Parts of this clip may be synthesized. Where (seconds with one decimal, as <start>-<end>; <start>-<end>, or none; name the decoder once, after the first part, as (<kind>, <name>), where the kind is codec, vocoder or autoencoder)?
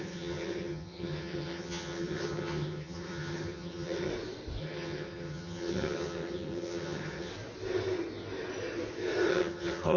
0.0-4.1 (vocoder, HiFi-GAN); 4.6-7.3; 9.3-10.0